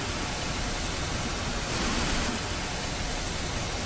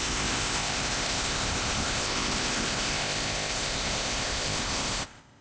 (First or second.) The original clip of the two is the first